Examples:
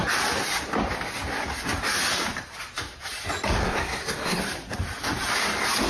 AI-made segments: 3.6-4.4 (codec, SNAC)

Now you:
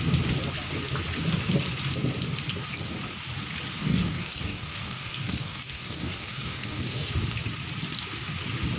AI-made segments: 3.8-7.1 (codec, DAC)

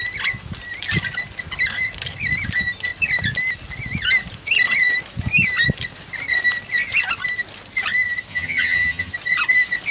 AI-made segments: 8.3-9.1 (vocoder, HiFi-GAN)

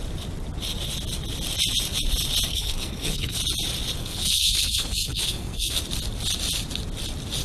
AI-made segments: 2.5-3.4 (codec, SNAC); 4.0-5.8

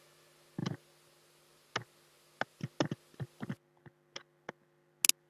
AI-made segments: none

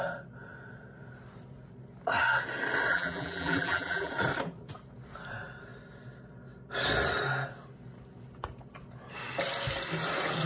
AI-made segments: 2.9-4.1 (vocoder, BigVGAN v2)